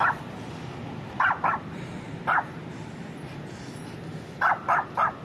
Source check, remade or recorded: recorded